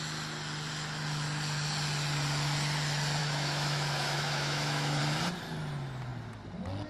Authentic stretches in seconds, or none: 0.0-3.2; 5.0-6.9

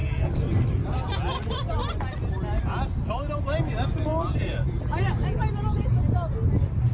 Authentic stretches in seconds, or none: 0.0-6.9

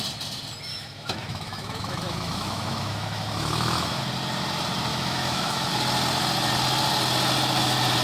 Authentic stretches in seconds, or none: 0.0-0.7; 4.0-4.9; 5.7-8.0

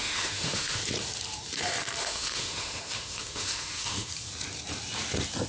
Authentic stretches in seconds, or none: 0.8-2.0; 4.1-5.5